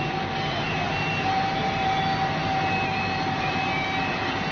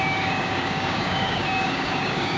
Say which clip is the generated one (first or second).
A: second